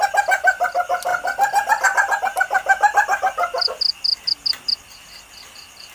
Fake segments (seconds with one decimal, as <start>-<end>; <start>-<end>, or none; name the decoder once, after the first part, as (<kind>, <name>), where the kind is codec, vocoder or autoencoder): none